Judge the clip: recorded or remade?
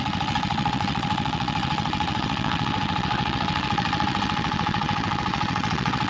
remade